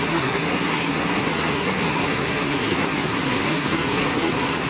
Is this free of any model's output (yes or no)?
no